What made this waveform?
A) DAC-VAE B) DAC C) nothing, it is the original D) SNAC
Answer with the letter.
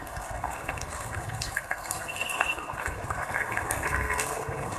D